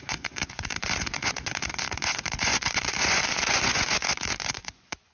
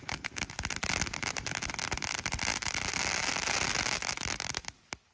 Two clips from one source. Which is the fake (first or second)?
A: first